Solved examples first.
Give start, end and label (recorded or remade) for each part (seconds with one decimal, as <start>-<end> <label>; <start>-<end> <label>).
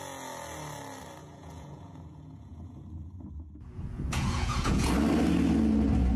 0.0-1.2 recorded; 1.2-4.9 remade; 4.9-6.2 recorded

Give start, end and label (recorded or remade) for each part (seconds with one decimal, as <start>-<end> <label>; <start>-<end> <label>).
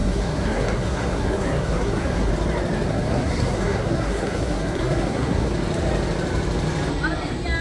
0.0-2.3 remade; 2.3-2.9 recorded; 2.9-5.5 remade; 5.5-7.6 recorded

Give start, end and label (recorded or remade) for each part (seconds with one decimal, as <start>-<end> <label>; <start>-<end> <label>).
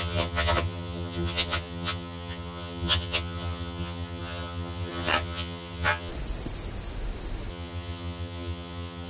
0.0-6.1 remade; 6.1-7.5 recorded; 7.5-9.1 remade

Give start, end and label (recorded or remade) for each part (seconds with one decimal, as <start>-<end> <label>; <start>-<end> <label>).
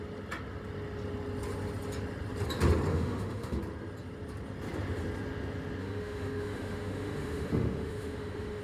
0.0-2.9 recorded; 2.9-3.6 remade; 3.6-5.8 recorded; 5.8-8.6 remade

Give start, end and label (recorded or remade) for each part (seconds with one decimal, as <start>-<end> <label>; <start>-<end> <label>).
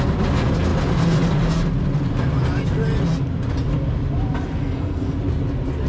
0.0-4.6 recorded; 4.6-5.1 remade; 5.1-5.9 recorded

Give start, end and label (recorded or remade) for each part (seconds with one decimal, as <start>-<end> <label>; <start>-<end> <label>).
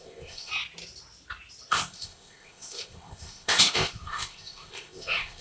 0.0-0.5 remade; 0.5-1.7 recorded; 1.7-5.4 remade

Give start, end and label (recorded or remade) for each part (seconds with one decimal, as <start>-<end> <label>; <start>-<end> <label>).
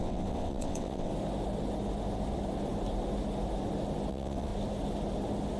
0.0-1.1 remade; 1.1-4.1 recorded; 4.1-4.5 remade; 4.5-5.6 recorded